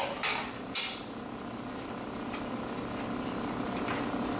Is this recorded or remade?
recorded